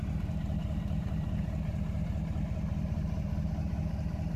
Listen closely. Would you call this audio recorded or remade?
remade